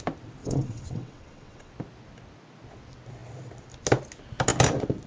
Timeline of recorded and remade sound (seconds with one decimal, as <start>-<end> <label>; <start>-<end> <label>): 0.0-0.4 recorded; 0.4-1.7 remade; 1.7-5.1 recorded